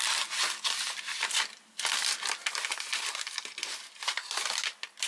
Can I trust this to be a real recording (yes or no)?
yes